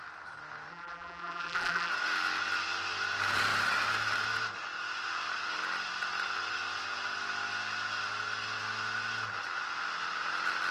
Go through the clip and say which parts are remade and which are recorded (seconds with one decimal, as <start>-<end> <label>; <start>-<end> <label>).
0.0-0.7 recorded; 0.7-1.9 remade; 1.9-10.7 recorded